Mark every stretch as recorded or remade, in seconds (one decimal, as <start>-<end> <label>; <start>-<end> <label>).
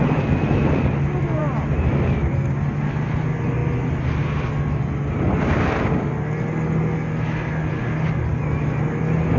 0.0-9.4 recorded